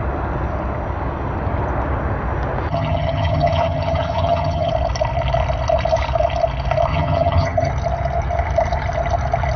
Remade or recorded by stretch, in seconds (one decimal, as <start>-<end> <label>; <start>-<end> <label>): 0.0-2.7 recorded; 2.7-4.7 remade; 4.7-6.9 recorded; 6.9-7.7 remade; 7.7-9.6 recorded